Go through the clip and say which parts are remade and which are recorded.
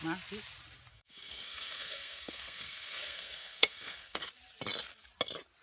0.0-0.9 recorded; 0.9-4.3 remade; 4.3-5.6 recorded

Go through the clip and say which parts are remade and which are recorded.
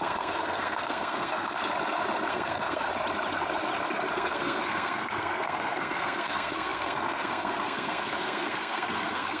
0.0-1.6 remade; 1.6-2.3 recorded; 2.3-2.9 remade; 2.9-4.1 recorded; 4.1-9.4 remade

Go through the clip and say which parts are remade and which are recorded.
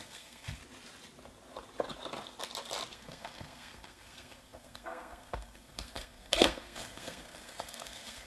0.0-0.6 remade; 0.6-2.9 recorded; 2.9-8.3 remade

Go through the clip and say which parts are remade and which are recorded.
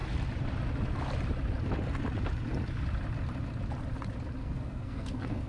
0.0-4.4 recorded; 4.4-5.5 remade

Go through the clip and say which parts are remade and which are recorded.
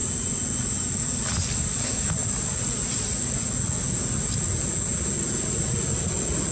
0.0-6.5 recorded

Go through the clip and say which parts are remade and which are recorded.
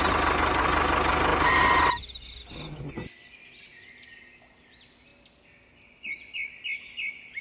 0.0-7.4 recorded